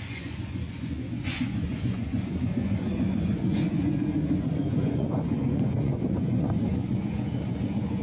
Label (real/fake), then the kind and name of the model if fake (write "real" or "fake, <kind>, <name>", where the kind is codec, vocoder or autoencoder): fake, vocoder, Vocos